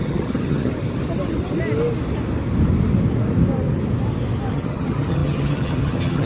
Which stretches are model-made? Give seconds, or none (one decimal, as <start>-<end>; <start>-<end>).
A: 0.0-0.7; 4.5-6.3